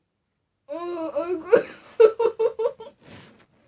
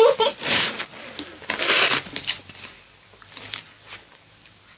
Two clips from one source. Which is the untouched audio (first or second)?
first